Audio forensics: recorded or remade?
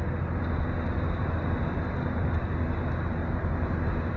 recorded